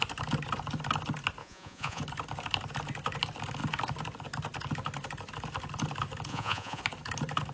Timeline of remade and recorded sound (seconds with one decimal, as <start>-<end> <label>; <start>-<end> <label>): 0.0-1.4 recorded; 1.4-2.0 remade; 2.0-6.3 recorded; 6.3-6.8 remade; 6.8-7.5 recorded